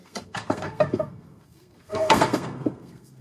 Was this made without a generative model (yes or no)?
no